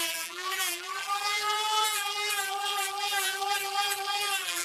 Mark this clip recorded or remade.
remade